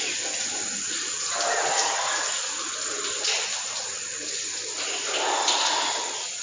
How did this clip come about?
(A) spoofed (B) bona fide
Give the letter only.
B